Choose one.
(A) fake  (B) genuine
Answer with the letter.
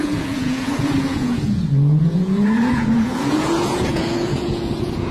A